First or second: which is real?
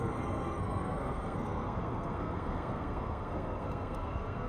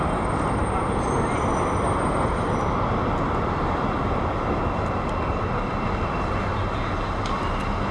second